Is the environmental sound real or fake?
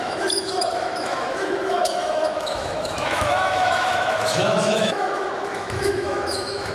fake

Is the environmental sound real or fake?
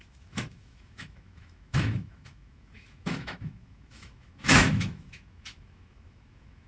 fake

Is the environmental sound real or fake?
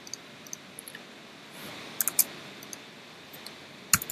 real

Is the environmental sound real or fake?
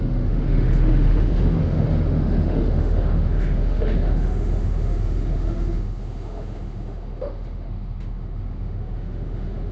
fake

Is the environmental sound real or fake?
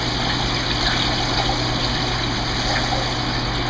real